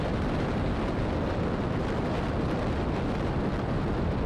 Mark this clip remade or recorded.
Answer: recorded